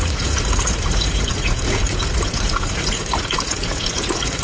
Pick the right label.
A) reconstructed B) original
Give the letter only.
A